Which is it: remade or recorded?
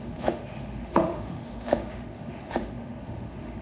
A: remade